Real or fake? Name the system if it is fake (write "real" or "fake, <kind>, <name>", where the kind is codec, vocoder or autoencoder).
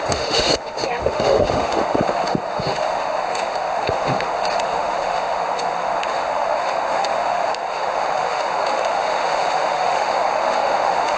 fake, autoencoder, DAC-VAE